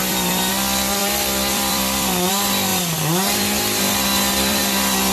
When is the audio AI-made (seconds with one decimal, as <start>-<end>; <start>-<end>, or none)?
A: 0.0-0.5; 1.0-2.3; 2.7-4.6

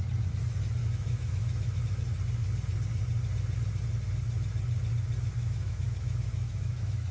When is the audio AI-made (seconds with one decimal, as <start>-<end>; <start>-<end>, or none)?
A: 0.8-1.8; 5.4-7.1

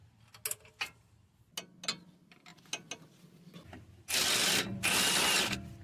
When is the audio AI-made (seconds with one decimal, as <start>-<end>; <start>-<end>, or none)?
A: none